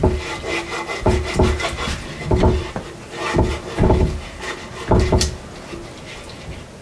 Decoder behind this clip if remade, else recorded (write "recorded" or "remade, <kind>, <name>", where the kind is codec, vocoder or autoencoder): recorded